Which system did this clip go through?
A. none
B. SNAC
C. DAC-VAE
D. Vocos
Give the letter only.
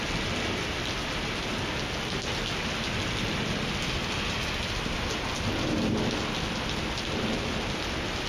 A